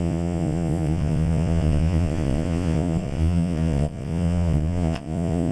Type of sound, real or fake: fake